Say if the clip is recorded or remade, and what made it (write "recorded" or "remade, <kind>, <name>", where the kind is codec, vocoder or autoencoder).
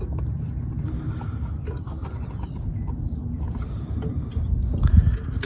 recorded